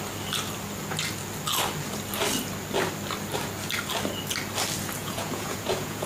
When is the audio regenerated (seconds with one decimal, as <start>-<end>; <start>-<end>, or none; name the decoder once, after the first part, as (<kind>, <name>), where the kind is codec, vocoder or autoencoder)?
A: 5.0-6.1 (vocoder, Vocos)